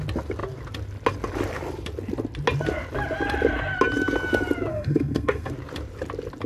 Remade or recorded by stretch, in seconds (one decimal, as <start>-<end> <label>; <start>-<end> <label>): 0.0-4.7 recorded; 4.7-5.5 remade; 5.5-6.5 recorded